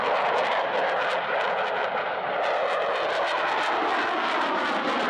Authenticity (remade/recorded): recorded